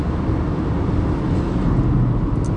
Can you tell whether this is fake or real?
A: real